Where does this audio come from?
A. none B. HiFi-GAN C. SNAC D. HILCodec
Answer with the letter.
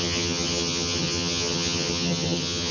B